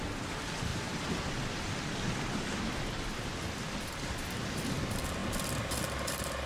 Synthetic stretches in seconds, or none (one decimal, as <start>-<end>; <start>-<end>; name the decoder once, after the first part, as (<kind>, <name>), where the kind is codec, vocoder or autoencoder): 0.0-0.7 (vocoder, BigVGAN v2); 4.6-5.2; 5.8-6.5